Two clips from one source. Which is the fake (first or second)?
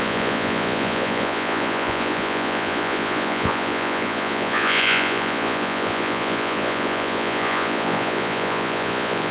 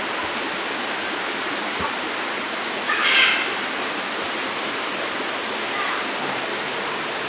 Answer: first